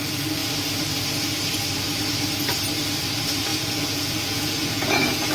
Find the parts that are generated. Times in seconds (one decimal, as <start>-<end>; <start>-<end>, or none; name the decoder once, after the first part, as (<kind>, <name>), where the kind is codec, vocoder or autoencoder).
3.5-5.3 (vocoder, Vocos)